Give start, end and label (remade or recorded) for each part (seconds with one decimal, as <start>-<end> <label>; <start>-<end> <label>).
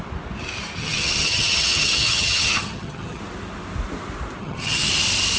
0.0-0.8 recorded; 0.8-3.2 remade; 3.2-4.4 recorded; 4.4-4.9 remade; 4.9-5.4 recorded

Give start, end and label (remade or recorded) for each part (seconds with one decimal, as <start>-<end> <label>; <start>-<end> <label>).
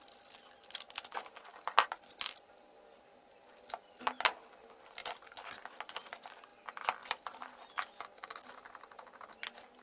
0.0-9.8 recorded